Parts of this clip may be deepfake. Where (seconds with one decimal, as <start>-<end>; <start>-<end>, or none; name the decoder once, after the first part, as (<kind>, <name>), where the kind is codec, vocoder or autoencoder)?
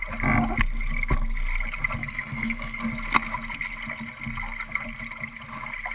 2.0-2.8 (codec, DAC)